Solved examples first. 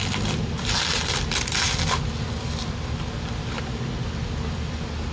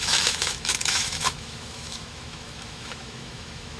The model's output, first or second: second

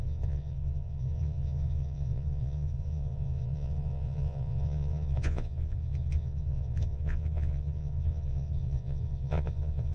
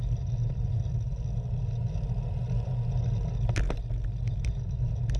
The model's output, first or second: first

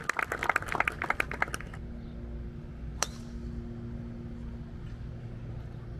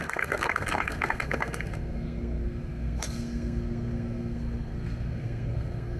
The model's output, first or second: second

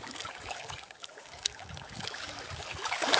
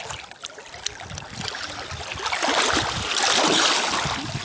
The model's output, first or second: first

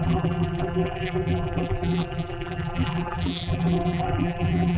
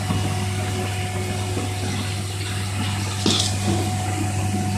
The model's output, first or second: first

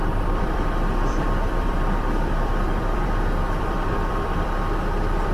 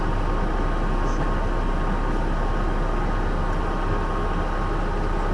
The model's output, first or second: first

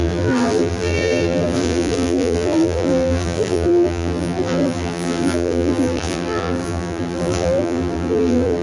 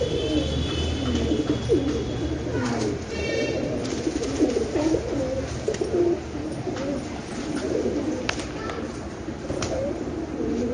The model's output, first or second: first